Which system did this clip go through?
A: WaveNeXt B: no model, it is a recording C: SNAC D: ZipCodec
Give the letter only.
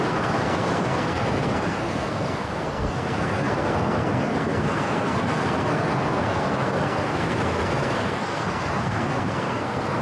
C